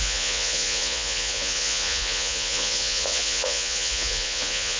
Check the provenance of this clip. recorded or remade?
remade